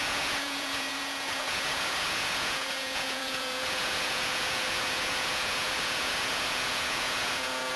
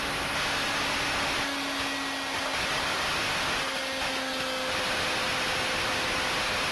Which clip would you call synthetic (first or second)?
first